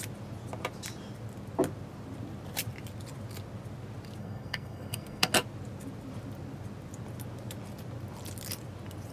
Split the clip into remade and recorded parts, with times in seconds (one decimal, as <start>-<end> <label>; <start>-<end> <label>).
0.0-4.2 recorded; 4.2-5.3 remade; 5.3-9.1 recorded